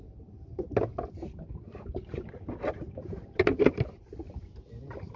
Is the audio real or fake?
real